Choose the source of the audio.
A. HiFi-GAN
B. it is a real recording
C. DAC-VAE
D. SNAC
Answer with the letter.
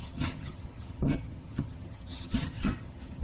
A